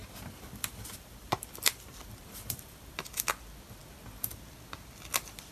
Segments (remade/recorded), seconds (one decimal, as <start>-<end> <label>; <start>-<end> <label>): 0.0-3.3 remade; 3.3-5.5 recorded